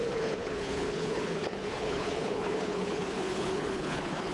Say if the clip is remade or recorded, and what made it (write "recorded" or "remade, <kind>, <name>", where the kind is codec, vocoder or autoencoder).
remade, codec, HILCodec